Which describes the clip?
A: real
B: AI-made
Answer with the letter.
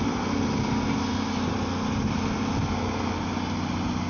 A